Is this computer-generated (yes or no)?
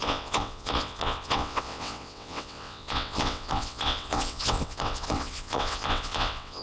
yes